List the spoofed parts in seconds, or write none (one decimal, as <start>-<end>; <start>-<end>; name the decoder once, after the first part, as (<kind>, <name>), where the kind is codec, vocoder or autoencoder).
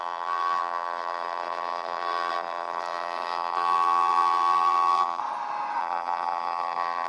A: 0.0-5.2 (vocoder, BigVGAN v2); 5.8-7.1